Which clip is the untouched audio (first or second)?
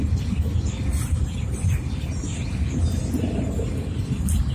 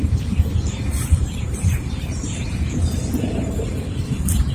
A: first